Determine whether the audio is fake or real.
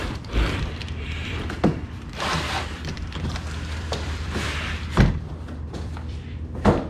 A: fake